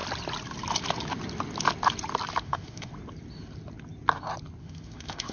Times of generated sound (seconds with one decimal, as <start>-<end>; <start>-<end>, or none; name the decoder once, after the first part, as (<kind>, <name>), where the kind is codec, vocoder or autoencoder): 2.4-2.9 (autoencoder, DAC-VAE); 4.6-5.3